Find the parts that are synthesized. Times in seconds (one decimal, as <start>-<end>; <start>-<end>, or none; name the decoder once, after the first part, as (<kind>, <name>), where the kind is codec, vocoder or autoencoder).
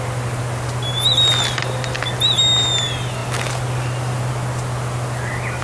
none